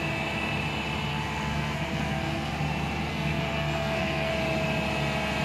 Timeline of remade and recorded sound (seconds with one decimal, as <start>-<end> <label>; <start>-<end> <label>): 0.0-1.1 recorded; 1.1-2.5 remade; 2.5-3.1 recorded; 3.1-4.3 remade; 4.3-5.4 recorded